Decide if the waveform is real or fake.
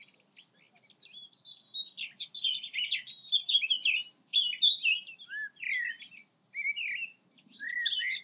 real